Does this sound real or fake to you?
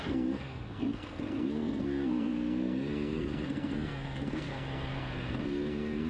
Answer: fake